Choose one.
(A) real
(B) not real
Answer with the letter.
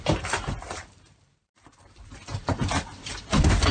B